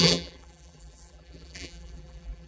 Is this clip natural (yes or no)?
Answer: no